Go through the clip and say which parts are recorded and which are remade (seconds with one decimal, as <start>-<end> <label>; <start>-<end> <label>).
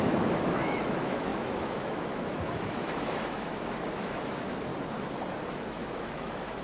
0.0-4.7 remade; 4.7-5.5 recorded; 5.5-6.6 remade